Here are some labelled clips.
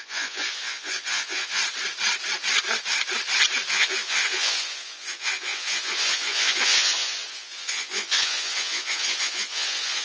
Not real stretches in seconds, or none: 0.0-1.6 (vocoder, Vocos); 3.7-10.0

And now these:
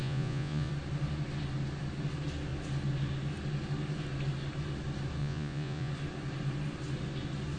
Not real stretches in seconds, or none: 0.0-0.7 (vocoder, Vocos); 5.2-5.9

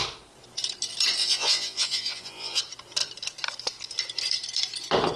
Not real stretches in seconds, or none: 1.2-2.6 (vocoder, Vocos)

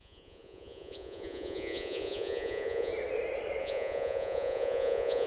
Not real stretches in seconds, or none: 0.0-2.9 (vocoder, Vocos); 3.6-5.3

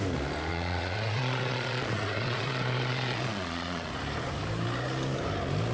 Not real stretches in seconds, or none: 0.5-3.9 (vocoder, Vocos)

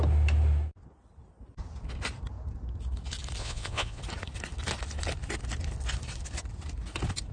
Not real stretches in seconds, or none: 3.4-4.0 (vocoder, Vocos)